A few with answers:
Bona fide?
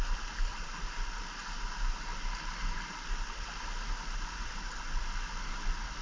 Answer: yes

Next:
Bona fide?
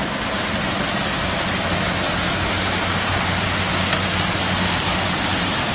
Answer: yes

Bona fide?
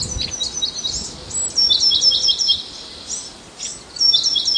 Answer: yes